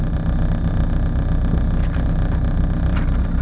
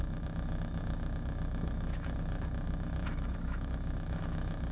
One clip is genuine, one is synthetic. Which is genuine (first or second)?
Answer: first